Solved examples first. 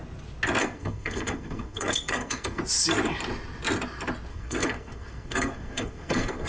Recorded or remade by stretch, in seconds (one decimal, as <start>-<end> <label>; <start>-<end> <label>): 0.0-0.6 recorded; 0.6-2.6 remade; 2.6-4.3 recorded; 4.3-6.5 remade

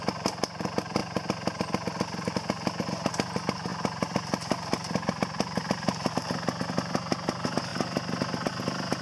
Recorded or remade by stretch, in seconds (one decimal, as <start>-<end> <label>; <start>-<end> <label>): 0.0-9.0 recorded

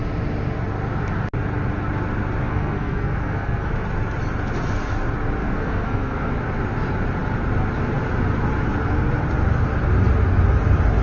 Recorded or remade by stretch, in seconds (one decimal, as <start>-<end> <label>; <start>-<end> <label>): 0.0-2.4 recorded; 2.4-3.7 remade; 3.7-5.4 recorded; 5.4-6.3 remade; 6.3-11.0 recorded

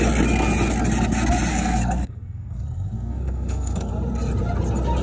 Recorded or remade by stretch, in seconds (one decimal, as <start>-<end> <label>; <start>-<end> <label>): 0.0-1.5 recorded; 1.5-3.9 remade; 3.9-5.0 recorded

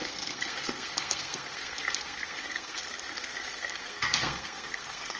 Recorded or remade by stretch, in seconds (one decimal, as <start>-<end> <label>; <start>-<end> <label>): 0.0-5.2 remade

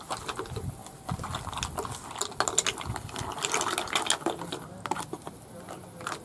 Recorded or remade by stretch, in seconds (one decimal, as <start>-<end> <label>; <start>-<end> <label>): 0.0-6.2 recorded